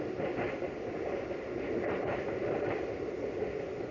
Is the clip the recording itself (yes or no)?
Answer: yes